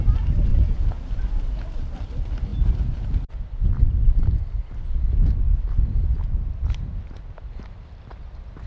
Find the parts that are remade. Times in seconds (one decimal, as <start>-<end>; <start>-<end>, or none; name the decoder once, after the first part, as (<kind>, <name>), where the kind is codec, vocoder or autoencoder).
0.5-1.0 (vocoder, Vocos)